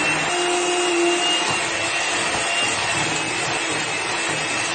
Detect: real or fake real